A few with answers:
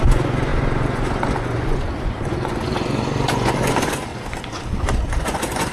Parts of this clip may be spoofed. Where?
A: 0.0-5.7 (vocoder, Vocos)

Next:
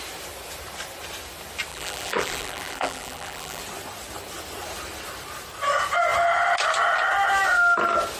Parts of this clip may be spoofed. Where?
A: 1.7-3.6 (vocoder, BigVGAN v2)

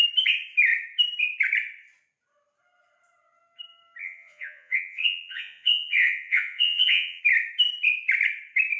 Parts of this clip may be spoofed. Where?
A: 4.0-7.2 (vocoder, Vocos)